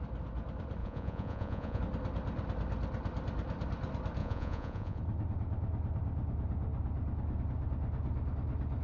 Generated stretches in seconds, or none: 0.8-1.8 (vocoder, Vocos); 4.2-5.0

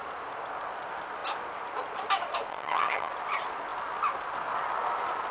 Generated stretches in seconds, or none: 2.5-3.1 (vocoder, HiFi-GAN)

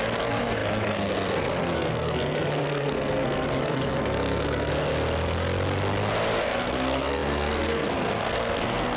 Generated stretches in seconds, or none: 0.0-4.7 (codec, SNAC); 6.4-9.0

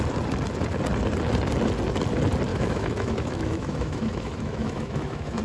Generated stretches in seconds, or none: 2.5-5.4 (autoencoder, DAC-VAE)

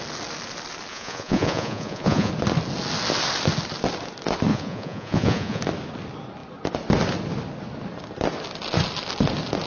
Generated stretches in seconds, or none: 0.9-2.3 (vocoder, Vocos); 4.5-5.6

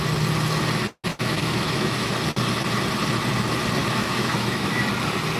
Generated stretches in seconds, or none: 1.1-2.1 (autoencoder, DAC-VAE); 3.8-4.8

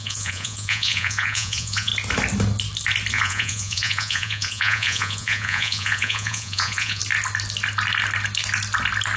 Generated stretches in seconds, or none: 0.0-1.9 (vocoder, Vocos); 3.1-7.0